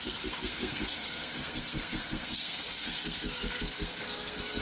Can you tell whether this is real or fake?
fake